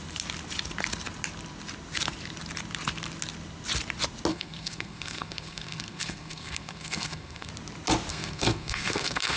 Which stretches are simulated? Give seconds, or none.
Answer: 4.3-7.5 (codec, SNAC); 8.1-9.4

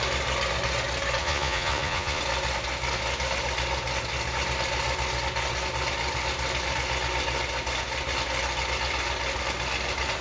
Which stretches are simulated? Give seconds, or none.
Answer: 1.2-2.2 (vocoder, Vocos)

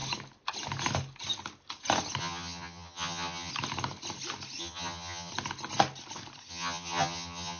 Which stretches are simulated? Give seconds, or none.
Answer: 2.2-3.5 (vocoder, HiFi-GAN); 4.6-5.3; 6.5-7.6

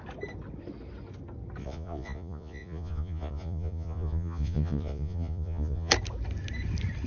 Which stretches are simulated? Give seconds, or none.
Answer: 1.6-5.9 (vocoder, Vocos)

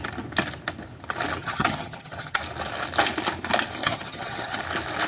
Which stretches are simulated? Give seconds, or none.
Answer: 1.4-2.4 (vocoder, HiFi-GAN); 3.8-4.6

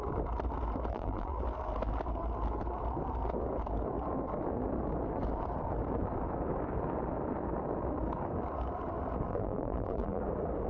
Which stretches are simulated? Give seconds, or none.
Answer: 0.9-1.4 (vocoder, BigVGAN v2); 9.3-10.2